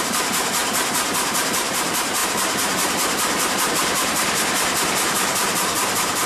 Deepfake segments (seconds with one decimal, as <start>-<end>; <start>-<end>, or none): 0.0-0.6; 1.4-6.3